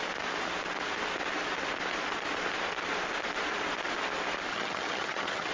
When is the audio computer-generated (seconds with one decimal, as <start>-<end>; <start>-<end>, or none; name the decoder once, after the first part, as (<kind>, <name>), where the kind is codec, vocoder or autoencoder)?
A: 4.5-5.5 (vocoder, HiFi-GAN)